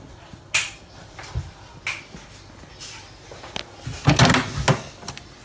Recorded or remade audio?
recorded